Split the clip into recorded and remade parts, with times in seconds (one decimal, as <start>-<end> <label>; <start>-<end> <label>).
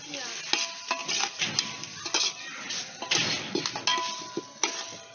0.0-1.0 recorded; 1.0-2.7 remade; 2.7-3.9 recorded; 3.9-4.4 remade; 4.4-5.1 recorded